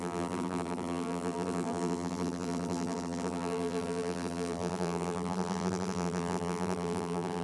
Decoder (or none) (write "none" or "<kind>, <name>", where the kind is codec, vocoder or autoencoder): vocoder, BigVGAN v2